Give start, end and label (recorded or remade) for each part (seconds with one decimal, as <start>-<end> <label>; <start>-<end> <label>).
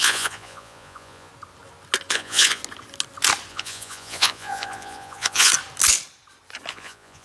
0.0-1.3 remade; 1.3-2.1 recorded; 2.1-2.6 remade; 2.6-3.5 recorded; 3.5-5.5 remade; 5.5-6.7 recorded; 6.7-7.2 remade